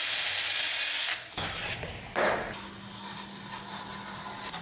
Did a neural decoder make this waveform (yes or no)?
no